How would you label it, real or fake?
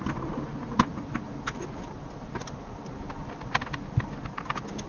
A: real